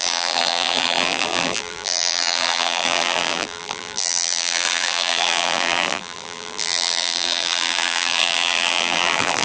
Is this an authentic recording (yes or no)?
no